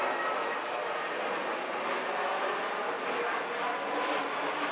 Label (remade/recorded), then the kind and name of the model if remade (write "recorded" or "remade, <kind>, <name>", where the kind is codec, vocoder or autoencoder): recorded